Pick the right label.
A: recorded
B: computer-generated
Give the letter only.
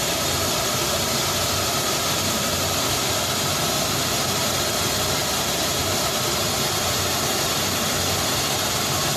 B